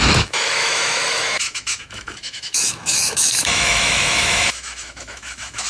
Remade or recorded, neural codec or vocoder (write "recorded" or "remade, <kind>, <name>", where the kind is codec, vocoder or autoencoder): remade, autoencoder, DAC-VAE